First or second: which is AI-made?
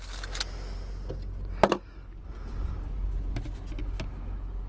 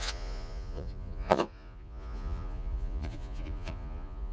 second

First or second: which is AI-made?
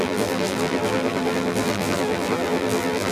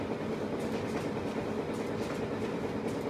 first